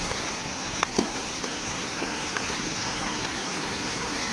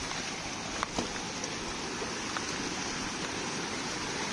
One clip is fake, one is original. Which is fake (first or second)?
first